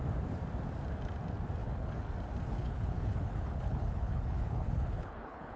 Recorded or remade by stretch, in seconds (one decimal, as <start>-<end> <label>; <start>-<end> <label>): 0.0-1.6 recorded; 1.6-2.1 remade; 2.1-2.5 recorded; 2.5-5.6 remade